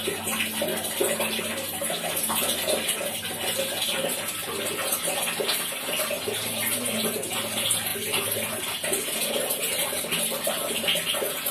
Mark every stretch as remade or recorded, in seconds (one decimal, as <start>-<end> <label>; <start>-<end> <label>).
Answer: 0.0-11.5 recorded